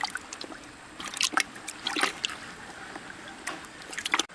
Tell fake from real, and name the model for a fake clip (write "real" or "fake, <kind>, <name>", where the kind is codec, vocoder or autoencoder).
real